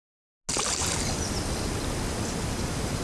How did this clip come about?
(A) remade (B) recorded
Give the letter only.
B